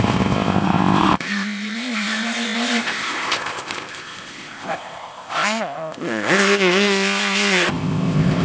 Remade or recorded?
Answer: remade